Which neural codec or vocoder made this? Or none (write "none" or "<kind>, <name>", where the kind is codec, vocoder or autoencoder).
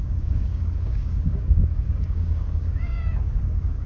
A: codec, DAC